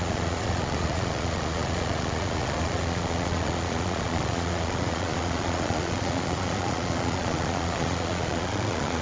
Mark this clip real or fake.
fake